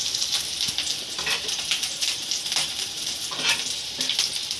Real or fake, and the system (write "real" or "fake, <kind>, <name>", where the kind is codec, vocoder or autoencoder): fake, vocoder, BigVGAN v2